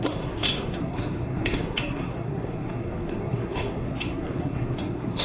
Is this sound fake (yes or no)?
yes